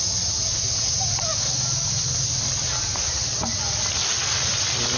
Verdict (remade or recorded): recorded